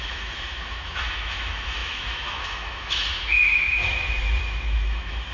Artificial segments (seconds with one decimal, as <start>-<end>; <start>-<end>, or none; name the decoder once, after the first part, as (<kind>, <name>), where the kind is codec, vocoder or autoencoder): 0.0-5.3 (autoencoder, DAC-VAE)